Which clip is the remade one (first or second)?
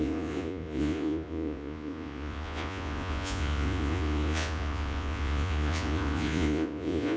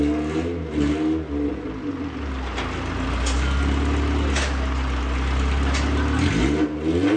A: first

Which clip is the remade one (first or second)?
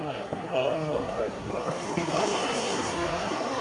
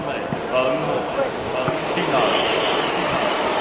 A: first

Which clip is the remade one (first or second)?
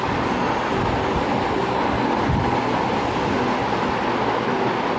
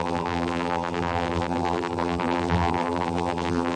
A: second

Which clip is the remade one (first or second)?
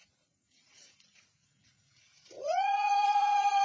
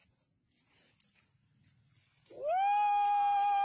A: first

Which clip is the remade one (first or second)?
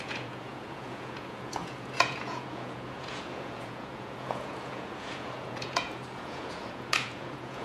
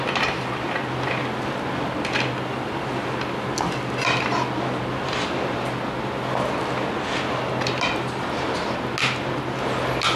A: first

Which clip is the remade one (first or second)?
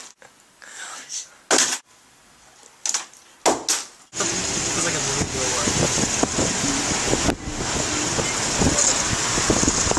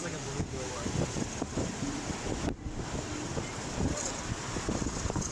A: second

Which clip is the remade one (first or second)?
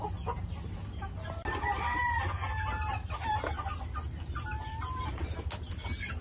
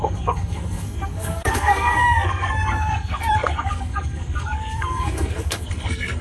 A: second